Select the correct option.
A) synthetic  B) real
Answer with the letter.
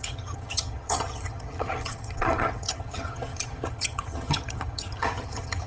A